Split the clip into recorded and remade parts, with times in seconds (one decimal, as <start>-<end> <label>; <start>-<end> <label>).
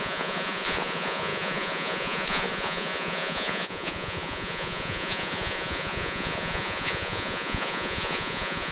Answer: 0.0-8.7 remade